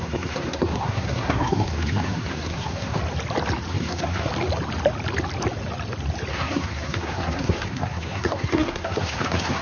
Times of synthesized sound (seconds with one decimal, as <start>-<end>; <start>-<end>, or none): 0.0-3.0; 3.7-4.3; 6.3-9.6